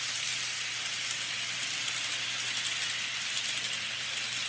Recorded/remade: recorded